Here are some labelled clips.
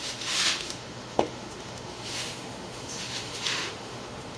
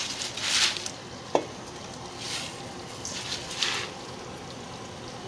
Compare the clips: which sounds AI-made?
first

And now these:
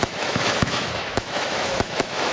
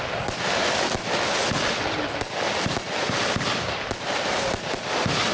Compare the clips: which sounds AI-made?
first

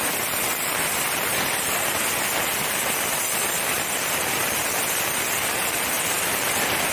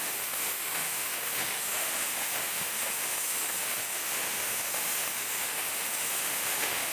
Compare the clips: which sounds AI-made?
second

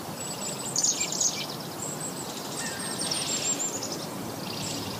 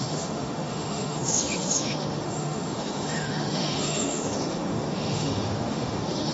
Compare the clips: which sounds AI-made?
second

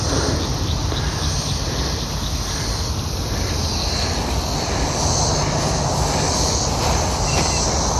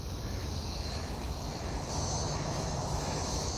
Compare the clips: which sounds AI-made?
second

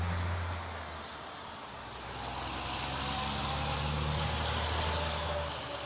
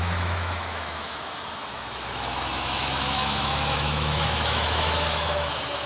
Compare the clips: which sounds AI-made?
second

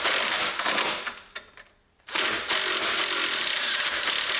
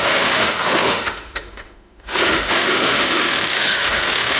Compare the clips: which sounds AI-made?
second